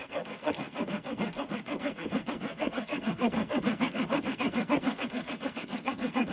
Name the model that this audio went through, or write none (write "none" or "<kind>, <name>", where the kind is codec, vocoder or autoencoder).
codec, SNAC